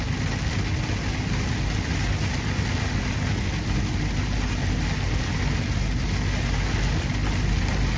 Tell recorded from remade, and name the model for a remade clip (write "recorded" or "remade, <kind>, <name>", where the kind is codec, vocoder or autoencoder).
recorded